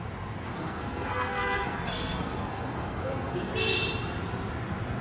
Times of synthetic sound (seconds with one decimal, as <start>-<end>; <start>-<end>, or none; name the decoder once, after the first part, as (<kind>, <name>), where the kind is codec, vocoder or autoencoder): 0.5-3.5 (codec, SNAC)